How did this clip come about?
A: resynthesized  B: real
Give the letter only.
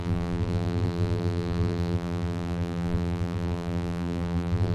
A